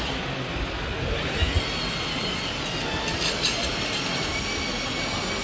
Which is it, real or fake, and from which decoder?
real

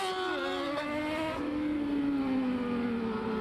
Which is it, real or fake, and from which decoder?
real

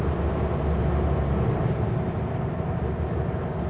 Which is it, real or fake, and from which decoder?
real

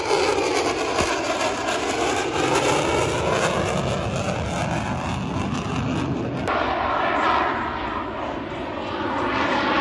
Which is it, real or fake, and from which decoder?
real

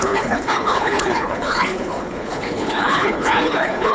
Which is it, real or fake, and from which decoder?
fake, codec, HILCodec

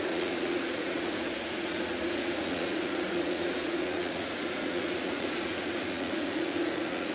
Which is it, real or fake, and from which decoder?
fake, vocoder, Vocos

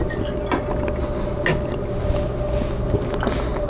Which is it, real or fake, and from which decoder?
real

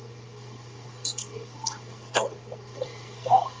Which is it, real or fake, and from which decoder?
fake, codec, SNAC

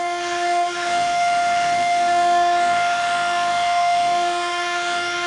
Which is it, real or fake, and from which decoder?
fake, autoencoder, DAC-VAE